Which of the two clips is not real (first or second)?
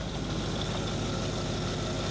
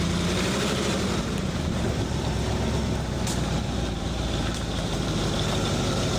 second